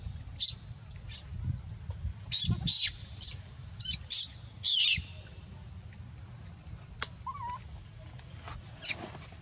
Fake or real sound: real